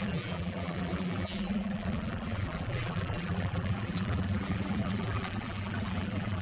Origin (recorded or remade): remade